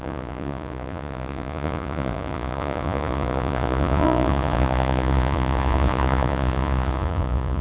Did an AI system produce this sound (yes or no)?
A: yes